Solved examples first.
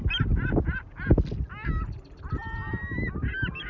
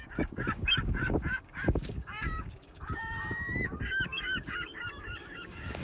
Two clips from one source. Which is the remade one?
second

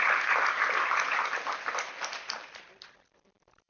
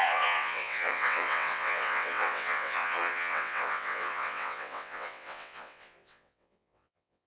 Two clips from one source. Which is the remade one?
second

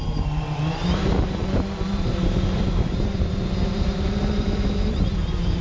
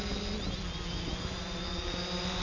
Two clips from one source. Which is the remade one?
first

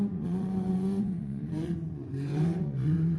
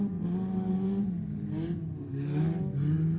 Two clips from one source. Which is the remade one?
first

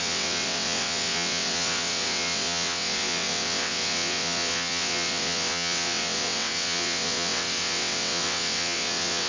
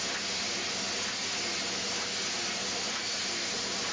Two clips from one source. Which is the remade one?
first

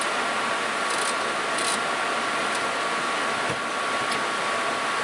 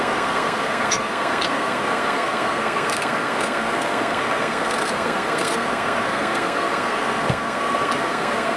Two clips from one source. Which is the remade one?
second